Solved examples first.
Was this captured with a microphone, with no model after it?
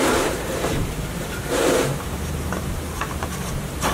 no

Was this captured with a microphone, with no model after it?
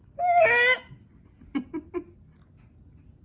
yes